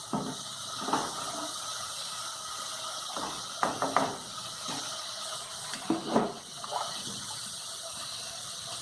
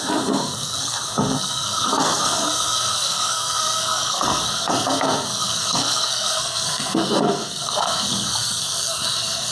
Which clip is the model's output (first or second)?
second